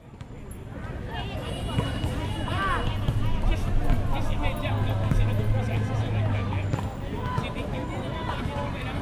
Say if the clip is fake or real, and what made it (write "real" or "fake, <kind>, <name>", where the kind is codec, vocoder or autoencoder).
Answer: real